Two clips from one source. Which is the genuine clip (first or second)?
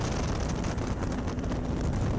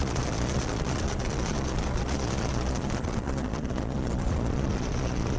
first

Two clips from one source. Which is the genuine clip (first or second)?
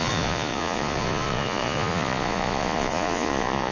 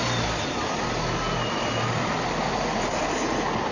second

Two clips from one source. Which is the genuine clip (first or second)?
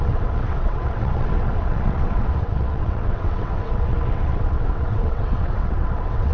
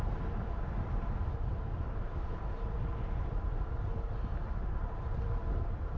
second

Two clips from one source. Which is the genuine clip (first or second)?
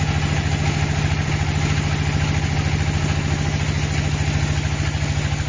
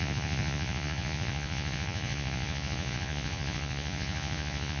first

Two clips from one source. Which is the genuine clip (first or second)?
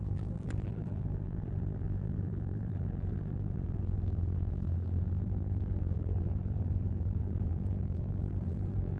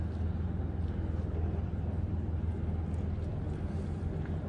second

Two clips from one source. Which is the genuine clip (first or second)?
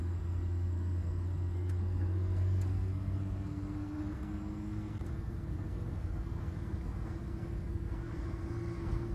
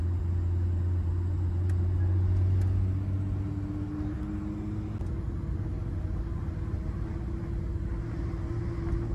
second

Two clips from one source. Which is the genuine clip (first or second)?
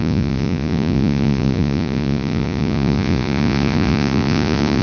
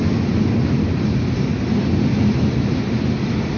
second